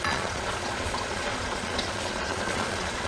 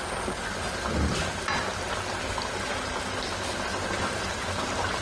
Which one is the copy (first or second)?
first